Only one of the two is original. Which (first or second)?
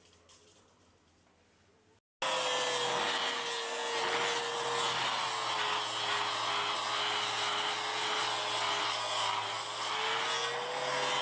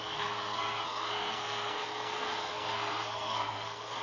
first